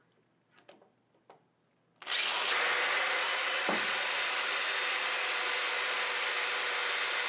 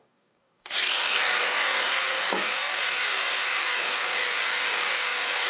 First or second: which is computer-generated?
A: second